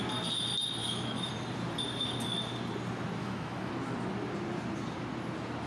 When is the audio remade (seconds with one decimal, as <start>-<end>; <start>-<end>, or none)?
0.8-1.3; 3.2-3.7

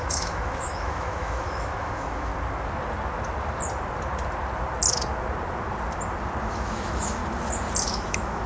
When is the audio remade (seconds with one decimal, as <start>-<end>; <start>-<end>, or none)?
0.0-2.3; 6.4-7.2; 7.9-8.5